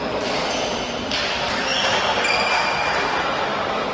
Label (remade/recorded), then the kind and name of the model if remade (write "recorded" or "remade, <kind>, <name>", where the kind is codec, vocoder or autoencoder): recorded